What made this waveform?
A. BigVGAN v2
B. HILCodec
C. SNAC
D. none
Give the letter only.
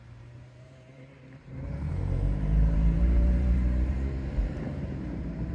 A